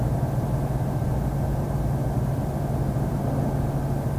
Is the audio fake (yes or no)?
no